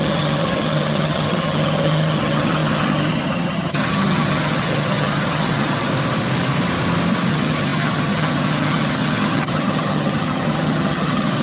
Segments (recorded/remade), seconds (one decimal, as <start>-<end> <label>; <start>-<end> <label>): 0.0-5.9 remade; 5.9-7.3 recorded; 7.3-11.4 remade

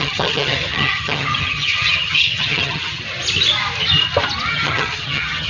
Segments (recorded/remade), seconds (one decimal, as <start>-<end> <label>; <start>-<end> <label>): 0.0-3.0 remade; 3.0-4.5 recorded; 4.5-5.5 remade